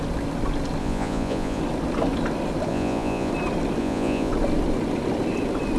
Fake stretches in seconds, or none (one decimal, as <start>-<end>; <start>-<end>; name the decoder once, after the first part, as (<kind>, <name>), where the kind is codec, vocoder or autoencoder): 0.8-1.6 (vocoder, Vocos); 2.7-3.3; 3.8-4.3